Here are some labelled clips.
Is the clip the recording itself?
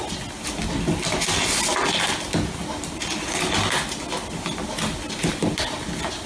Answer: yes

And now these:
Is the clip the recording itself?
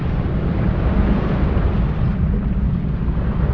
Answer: yes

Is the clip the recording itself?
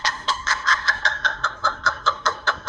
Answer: no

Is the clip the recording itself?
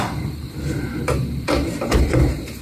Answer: no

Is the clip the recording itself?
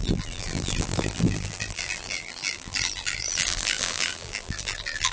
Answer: no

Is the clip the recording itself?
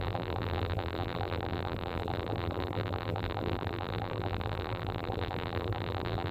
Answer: no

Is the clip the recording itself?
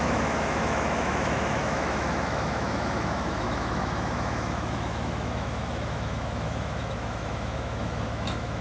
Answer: no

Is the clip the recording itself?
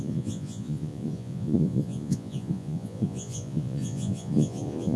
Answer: no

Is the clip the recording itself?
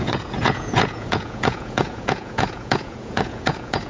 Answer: no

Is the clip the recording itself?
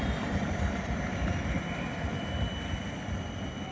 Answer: yes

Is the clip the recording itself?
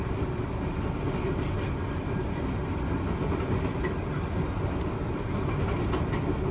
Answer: yes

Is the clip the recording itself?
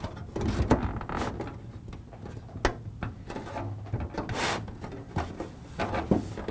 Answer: yes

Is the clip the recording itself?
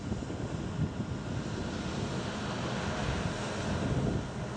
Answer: yes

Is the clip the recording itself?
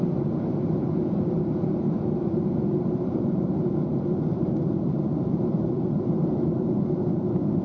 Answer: yes